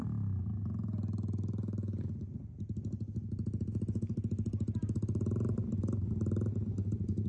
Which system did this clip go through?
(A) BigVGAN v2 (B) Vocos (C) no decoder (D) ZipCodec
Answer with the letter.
C